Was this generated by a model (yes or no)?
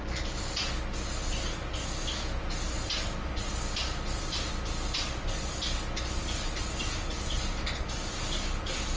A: no